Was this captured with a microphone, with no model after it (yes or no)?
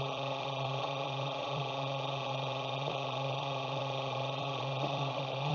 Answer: no